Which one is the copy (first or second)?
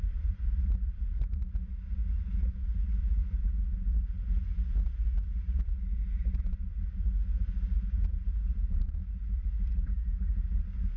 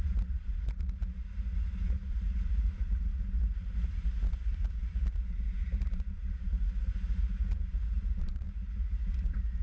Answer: second